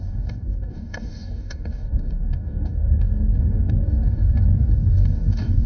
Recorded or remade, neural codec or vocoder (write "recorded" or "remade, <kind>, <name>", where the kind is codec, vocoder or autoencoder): remade, codec, DAC